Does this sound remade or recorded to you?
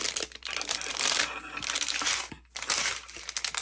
recorded